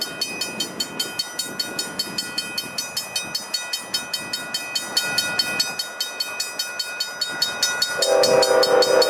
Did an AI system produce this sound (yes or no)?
no